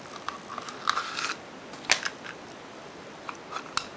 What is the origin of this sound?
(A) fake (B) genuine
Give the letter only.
B